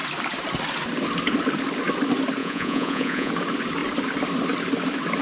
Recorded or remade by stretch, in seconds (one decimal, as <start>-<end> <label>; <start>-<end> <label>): 0.0-2.4 recorded; 2.4-3.3 remade; 3.3-5.2 recorded